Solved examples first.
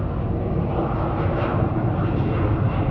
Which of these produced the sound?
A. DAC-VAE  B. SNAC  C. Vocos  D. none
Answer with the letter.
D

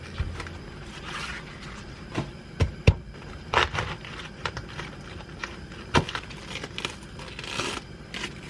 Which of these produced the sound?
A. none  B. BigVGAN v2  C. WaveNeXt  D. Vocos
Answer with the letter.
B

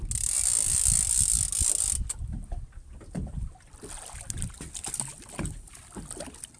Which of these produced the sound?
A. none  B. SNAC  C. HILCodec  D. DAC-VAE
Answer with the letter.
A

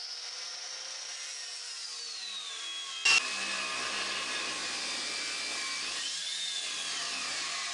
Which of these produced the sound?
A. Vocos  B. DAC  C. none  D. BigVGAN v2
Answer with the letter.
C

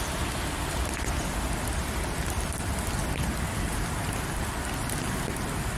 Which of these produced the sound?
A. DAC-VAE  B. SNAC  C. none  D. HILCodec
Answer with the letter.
C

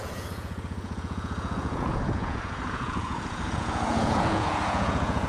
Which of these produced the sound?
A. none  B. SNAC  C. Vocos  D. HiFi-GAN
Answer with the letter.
C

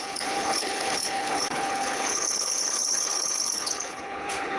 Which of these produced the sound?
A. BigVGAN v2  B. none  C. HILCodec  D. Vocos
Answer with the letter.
C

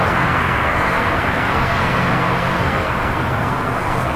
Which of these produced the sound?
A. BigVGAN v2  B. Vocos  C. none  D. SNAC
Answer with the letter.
D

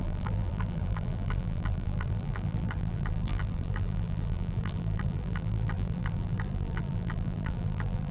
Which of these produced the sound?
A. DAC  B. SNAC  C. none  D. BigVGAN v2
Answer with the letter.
D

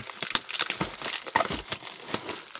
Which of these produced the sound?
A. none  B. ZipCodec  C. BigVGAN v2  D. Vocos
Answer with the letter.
A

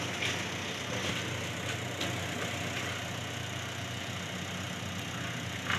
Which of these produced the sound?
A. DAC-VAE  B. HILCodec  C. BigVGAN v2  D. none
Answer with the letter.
D